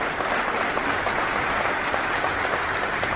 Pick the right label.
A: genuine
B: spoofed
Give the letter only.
A